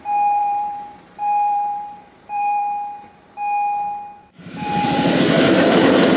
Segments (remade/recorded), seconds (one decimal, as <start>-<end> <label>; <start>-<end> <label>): 0.0-0.4 recorded; 0.4-2.6 remade; 2.6-4.2 recorded; 4.2-5.2 remade; 5.2-6.2 recorded